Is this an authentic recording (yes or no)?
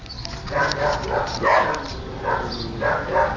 yes